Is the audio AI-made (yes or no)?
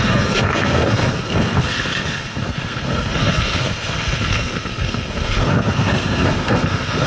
yes